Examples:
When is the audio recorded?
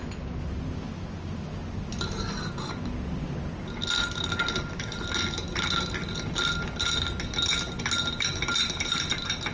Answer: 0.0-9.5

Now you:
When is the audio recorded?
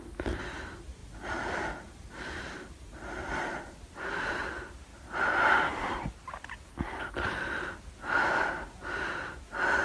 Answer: 0.0-9.8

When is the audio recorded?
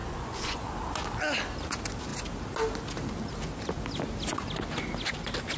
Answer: 0.7-5.6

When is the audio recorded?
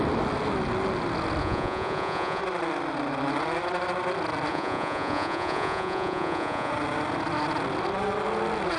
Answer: 0.0-1.4; 2.4-4.5; 6.7-8.8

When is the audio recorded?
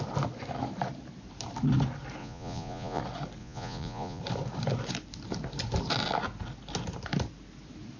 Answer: 0.0-2.2; 3.0-3.4; 4.2-8.0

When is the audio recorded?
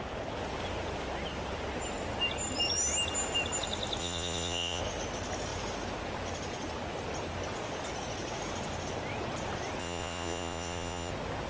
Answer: 0.0-4.0; 4.8-9.8; 11.1-11.5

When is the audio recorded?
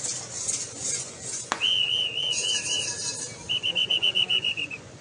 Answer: 0.0-0.8; 2.5-3.8